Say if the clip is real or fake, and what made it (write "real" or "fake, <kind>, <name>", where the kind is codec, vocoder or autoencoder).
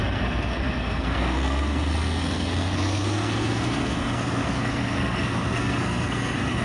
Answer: fake, codec, SNAC